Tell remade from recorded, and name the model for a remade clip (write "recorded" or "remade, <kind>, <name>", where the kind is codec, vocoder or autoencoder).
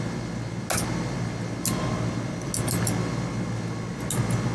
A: recorded